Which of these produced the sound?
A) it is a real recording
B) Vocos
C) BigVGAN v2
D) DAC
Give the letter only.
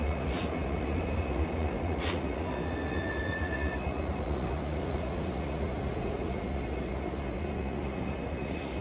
B